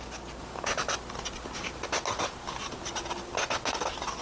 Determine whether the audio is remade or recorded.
recorded